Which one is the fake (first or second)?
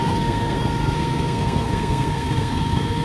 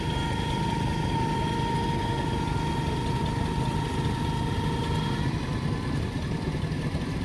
first